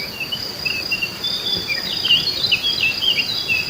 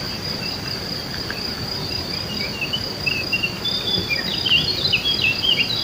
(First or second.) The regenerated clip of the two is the second